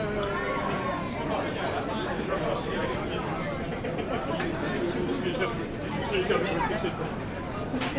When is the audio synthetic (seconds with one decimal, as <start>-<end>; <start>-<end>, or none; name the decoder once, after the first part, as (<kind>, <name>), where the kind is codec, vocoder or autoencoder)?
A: none